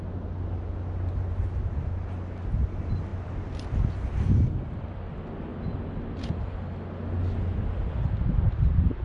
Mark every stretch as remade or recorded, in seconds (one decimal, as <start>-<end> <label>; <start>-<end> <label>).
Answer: 0.0-9.0 recorded